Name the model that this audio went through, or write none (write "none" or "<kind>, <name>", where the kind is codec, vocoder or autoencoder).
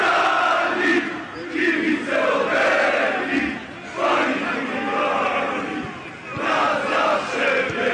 none